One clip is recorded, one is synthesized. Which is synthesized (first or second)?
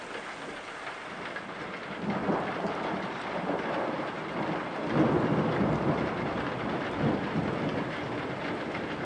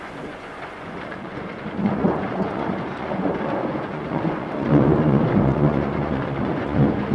second